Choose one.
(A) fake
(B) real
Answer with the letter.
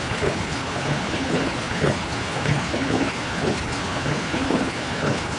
A